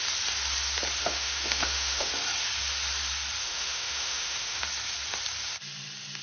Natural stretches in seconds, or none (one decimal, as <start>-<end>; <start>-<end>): 0.0-1.0; 2.1-3.4; 4.6-6.2